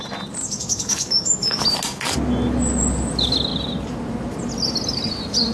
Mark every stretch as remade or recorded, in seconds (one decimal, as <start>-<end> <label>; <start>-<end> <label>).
0.0-0.4 recorded; 0.4-1.6 remade; 1.6-5.5 recorded